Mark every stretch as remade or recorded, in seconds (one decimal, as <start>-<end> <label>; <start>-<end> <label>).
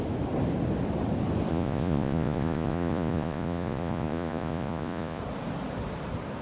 0.0-1.5 recorded; 1.5-5.2 remade; 5.2-6.4 recorded